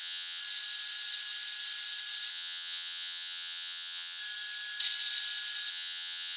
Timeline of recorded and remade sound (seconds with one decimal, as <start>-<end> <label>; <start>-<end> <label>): 0.0-0.4 remade; 0.4-2.3 recorded; 2.3-4.2 remade; 4.2-5.7 recorded; 5.7-6.4 remade